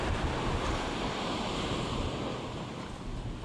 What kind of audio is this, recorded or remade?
recorded